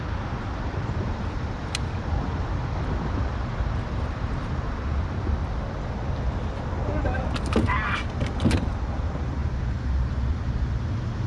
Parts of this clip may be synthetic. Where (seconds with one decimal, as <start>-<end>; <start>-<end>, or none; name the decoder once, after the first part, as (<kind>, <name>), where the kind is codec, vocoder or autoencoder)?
0.0-5.4 (vocoder, BigVGAN v2); 8.8-11.3